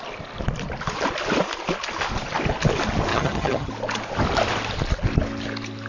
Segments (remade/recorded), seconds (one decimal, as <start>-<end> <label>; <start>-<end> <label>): 0.0-3.1 recorded; 3.1-3.7 remade; 3.7-5.9 recorded